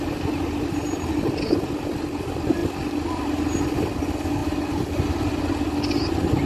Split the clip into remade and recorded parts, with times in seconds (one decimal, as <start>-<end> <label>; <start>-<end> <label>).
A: 0.0-6.5 recorded